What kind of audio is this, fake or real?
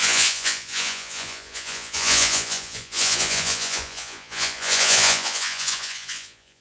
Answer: fake